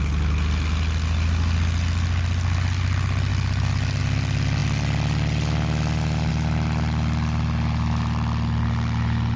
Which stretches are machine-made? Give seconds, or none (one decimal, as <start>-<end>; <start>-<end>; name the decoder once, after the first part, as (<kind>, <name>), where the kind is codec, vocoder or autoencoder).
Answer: none